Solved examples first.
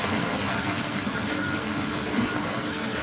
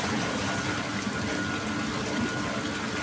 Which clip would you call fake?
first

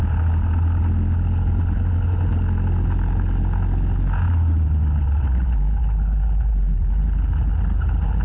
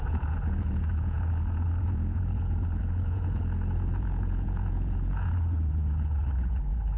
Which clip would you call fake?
second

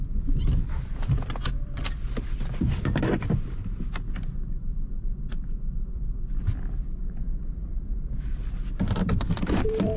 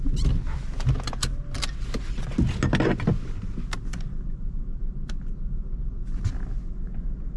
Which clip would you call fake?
first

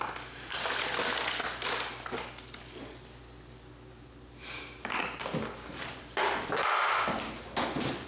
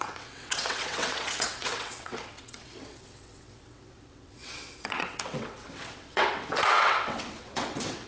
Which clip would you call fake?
second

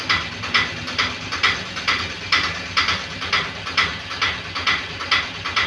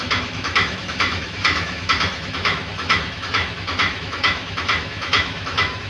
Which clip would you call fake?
second